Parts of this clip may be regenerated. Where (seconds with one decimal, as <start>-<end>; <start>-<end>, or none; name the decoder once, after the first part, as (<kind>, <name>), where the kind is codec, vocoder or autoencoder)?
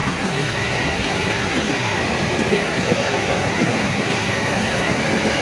0.0-2.0 (codec, SNAC); 2.5-5.0